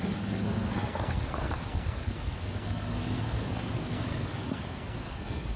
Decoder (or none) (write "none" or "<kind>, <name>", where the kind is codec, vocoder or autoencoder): codec, SNAC